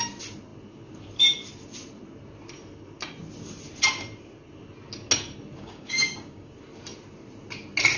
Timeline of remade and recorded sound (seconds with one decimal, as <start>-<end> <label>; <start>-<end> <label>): 0.0-5.6 recorded; 5.6-6.5 remade; 6.5-8.0 recorded